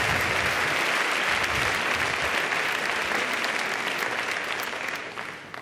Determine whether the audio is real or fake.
real